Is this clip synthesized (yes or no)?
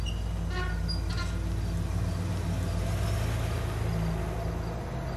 no